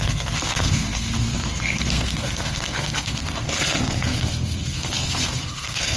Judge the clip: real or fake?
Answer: fake